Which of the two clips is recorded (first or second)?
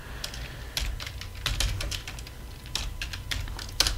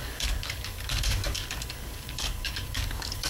first